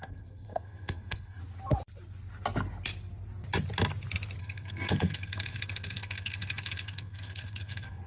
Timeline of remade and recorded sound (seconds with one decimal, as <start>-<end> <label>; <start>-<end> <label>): 0.0-1.4 remade; 1.4-4.4 recorded; 4.4-8.1 remade